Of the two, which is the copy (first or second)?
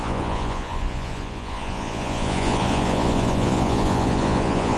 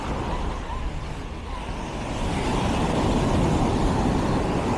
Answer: first